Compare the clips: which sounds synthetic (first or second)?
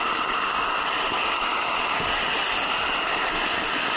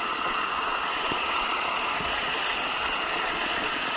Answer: second